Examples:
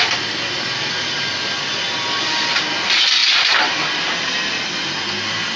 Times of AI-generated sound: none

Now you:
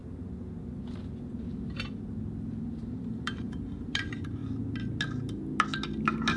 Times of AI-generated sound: 2.8-4.4 (vocoder, BigVGAN v2)

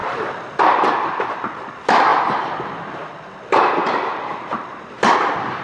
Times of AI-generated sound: 0.0-5.6 (vocoder, BigVGAN v2)

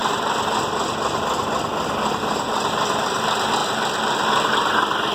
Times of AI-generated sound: 0.0-3.1 (vocoder, BigVGAN v2); 3.6-4.5

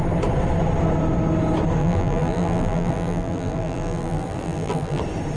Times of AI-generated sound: 1.8-5.0 (vocoder, BigVGAN v2)

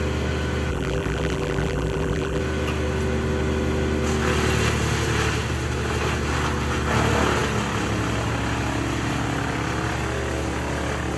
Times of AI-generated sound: 0.7-2.4 (vocoder, BigVGAN v2)

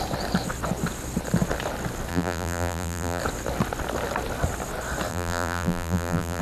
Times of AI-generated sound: 2.1-3.2 (vocoder, BigVGAN v2); 5.1-6.4